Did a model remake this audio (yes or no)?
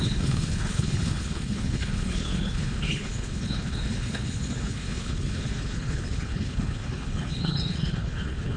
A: yes